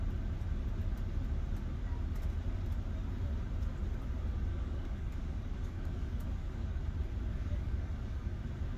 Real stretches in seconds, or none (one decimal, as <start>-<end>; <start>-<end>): 0.0-4.5; 6.8-7.3; 8.4-8.8